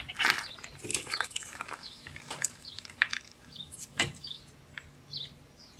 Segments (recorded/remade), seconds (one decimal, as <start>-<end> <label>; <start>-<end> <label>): 0.0-0.9 recorded; 0.9-4.4 remade; 4.4-5.8 recorded